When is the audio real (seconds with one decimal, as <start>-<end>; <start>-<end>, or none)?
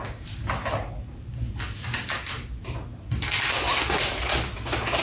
0.0-5.0